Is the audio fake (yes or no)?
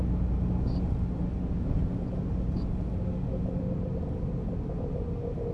no